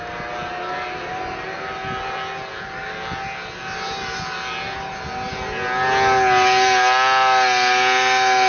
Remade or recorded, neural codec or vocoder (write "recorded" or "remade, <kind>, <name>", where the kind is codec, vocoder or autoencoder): recorded